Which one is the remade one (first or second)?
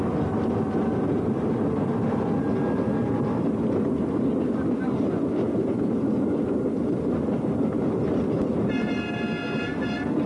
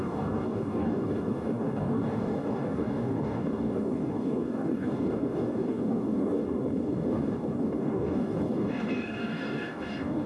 second